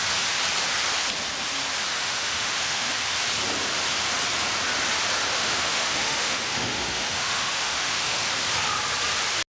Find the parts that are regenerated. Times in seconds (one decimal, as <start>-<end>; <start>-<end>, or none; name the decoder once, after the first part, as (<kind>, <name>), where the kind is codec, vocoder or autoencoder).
1.9-2.9 (autoencoder, DAC-VAE); 5.3-8.3